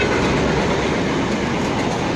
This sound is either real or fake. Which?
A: real